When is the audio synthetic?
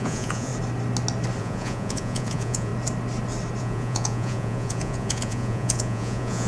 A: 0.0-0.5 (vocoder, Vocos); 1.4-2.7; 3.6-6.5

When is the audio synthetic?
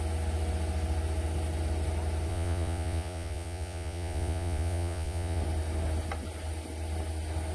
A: 2.3-5.4 (vocoder, Vocos)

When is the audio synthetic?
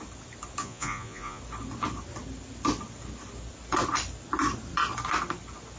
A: 0.6-1.4 (vocoder, Vocos)